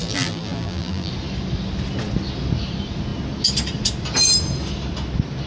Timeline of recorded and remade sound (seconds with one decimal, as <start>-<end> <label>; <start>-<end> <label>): 0.0-1.1 remade; 1.1-5.5 recorded